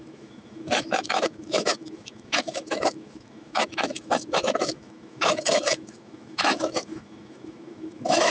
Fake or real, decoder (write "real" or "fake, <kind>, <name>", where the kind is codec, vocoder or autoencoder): fake, autoencoder, DAC-VAE